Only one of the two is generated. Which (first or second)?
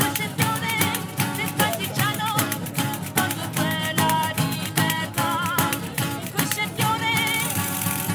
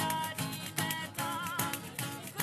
first